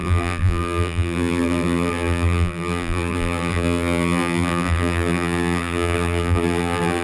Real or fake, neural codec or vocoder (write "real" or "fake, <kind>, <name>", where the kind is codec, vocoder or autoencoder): fake, vocoder, BigVGAN v2